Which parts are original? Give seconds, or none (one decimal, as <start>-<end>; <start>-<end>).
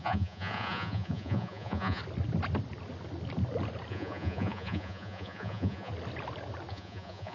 2.0-3.9; 5.9-6.7